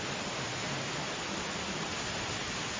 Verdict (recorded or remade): recorded